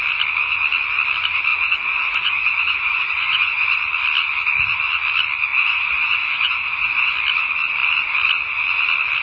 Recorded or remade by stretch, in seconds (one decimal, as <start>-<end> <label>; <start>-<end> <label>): 0.0-1.5 recorded; 1.5-3.8 remade; 3.8-5.5 recorded; 5.5-7.1 remade; 7.1-9.2 recorded